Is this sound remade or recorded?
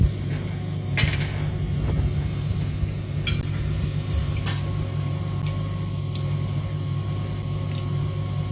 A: recorded